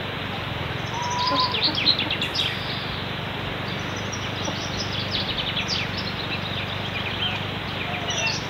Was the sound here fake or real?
real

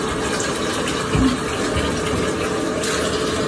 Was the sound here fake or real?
real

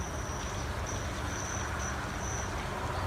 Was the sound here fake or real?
real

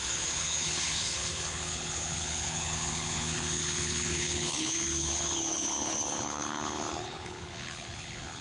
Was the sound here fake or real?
fake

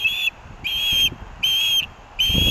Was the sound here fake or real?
real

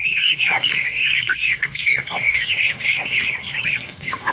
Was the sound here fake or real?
fake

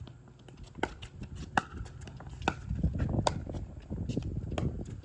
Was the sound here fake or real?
real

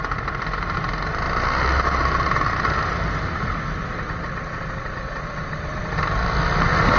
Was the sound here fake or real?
real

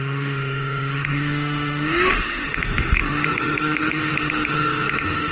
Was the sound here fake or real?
fake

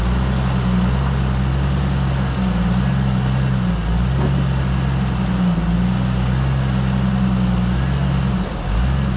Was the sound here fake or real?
real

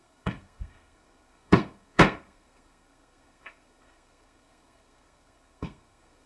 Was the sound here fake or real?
fake